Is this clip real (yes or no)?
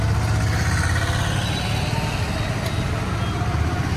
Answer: yes